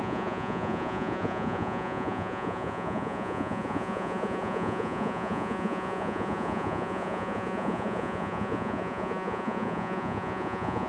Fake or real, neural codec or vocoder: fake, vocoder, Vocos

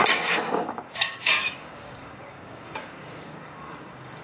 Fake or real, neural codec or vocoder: fake, codec, DAC